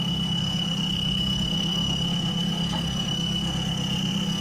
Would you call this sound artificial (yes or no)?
yes